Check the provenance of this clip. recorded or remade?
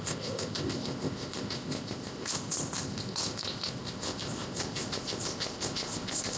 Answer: remade